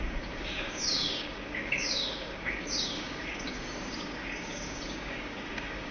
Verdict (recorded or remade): remade